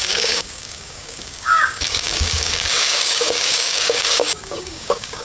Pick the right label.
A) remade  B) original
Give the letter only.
A